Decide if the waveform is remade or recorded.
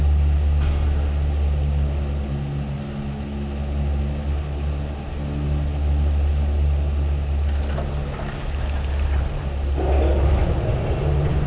recorded